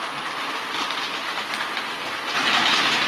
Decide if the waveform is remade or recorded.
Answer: recorded